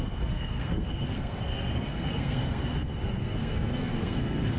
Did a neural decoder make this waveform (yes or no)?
yes